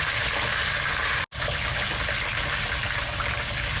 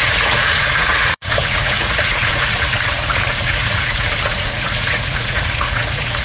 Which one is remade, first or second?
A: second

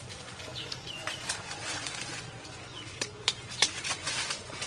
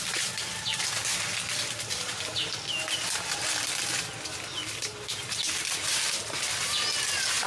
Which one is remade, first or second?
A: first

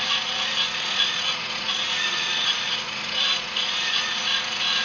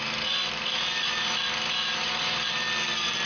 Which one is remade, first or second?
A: first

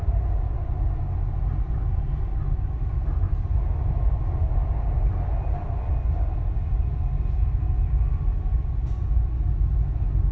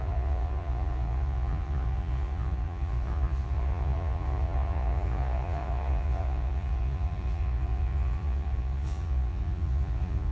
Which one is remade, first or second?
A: second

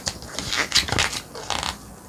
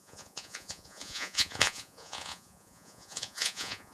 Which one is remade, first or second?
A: second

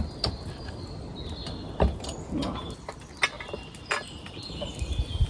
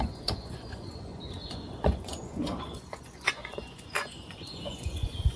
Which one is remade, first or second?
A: second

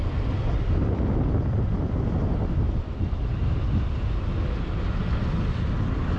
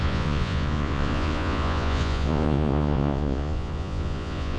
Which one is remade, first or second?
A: second